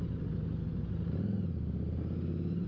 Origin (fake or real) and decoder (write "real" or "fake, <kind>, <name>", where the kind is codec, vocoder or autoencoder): real